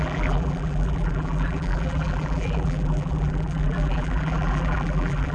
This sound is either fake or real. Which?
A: fake